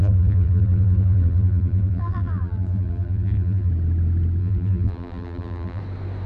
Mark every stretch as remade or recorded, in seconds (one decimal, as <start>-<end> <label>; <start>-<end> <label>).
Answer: 0.0-3.7 remade; 3.7-4.4 recorded; 4.4-5.8 remade; 5.8-6.3 recorded